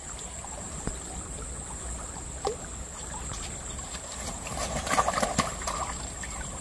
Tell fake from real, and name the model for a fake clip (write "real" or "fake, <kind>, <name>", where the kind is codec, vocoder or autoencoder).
real